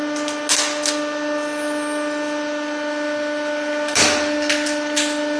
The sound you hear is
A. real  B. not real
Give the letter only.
A